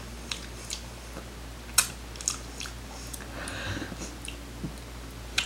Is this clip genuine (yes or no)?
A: yes